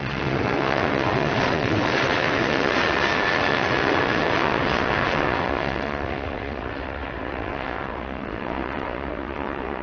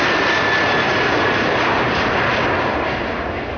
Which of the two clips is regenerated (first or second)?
first